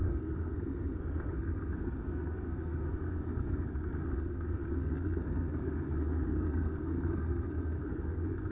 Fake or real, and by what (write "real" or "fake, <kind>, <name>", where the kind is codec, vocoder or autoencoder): fake, codec, SNAC